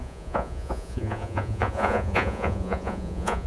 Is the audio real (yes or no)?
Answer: no